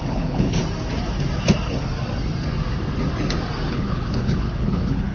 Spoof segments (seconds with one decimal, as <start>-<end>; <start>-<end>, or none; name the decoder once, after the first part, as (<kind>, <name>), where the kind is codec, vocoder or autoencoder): 0.0-0.6 (codec, HILCodec); 3.7-5.1